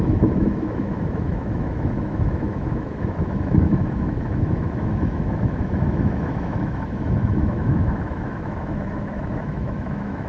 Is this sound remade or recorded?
remade